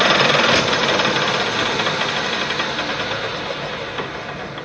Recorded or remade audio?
recorded